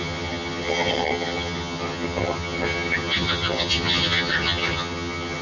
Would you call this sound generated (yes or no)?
yes